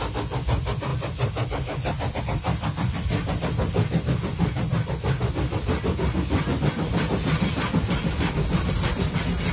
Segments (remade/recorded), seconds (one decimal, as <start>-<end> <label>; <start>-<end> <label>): 0.0-9.5 recorded